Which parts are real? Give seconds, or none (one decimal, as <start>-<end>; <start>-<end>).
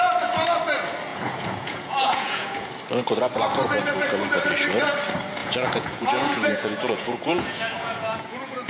0.0-1.1; 2.7-5.4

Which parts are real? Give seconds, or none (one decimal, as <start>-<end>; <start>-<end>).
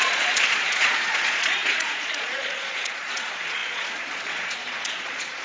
none